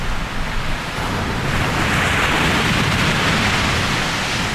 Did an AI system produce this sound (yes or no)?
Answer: no